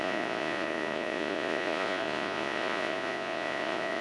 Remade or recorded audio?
remade